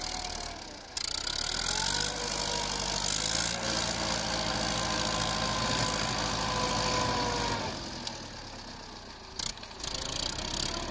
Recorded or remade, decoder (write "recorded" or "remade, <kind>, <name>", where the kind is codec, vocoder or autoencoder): recorded